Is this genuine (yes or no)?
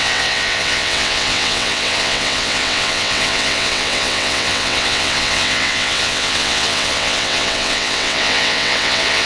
no